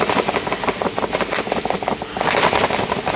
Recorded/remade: recorded